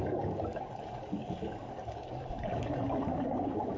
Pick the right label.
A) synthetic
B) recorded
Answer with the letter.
A